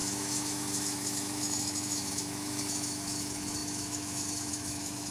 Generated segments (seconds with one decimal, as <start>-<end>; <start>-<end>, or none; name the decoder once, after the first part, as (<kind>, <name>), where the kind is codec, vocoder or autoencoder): 0.0-5.1 (autoencoder, DAC-VAE)